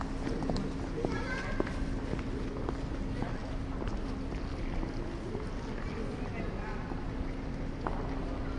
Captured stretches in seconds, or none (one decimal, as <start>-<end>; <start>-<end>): 0.0-8.6